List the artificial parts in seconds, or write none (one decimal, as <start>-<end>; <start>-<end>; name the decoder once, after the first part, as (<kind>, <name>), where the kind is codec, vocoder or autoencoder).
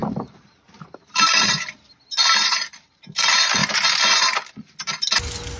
0.0-1.6 (vocoder, BigVGAN v2); 3.6-4.3